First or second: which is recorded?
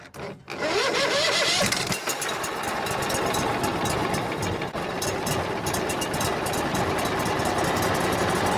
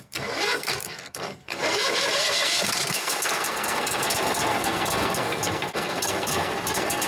first